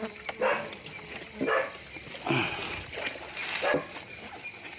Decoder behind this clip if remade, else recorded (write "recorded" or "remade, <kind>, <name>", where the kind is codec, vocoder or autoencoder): recorded